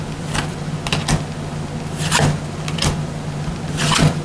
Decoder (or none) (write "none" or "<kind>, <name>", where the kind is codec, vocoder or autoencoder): none